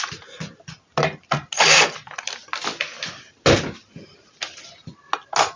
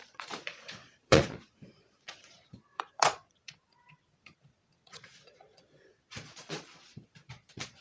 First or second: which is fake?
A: second